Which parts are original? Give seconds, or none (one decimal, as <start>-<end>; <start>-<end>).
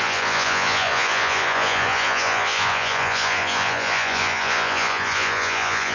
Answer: none